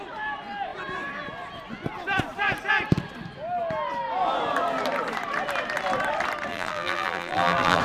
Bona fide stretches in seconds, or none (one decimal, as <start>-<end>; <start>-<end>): 0.0-6.5